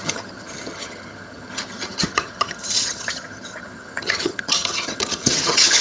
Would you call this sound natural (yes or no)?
no